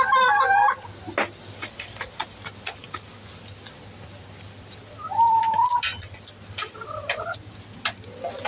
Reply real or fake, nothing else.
real